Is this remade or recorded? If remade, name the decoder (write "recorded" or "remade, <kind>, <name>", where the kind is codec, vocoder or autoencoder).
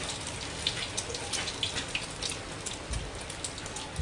recorded